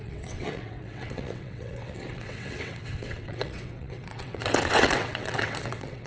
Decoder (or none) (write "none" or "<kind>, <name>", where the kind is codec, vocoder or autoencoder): vocoder, WaveNeXt